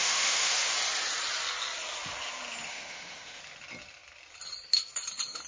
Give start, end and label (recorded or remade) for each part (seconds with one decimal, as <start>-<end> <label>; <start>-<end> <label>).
0.0-0.7 remade; 0.7-2.7 recorded; 2.7-3.4 remade; 3.4-5.5 recorded